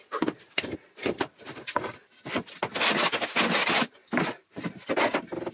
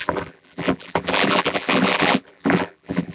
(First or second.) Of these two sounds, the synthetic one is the second